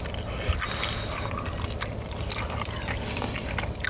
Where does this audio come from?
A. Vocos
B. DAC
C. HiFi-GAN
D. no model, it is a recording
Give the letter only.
D